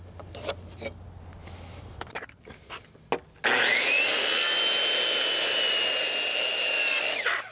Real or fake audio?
real